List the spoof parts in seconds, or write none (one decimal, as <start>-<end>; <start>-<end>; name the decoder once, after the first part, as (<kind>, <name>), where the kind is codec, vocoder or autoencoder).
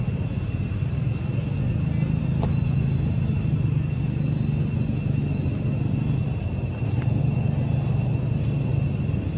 none